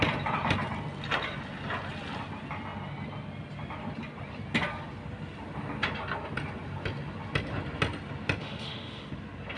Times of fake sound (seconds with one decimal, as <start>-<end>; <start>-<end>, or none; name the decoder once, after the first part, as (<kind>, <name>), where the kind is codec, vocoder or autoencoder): 8.4-9.1 (autoencoder, DAC-VAE)